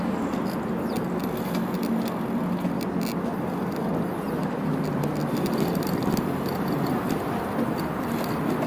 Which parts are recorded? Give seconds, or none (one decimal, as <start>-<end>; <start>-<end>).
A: 0.0-8.7